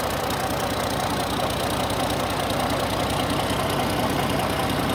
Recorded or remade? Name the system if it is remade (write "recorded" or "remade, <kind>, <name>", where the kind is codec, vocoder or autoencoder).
recorded